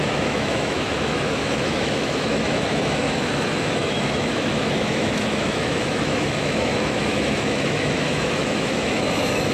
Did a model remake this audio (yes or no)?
yes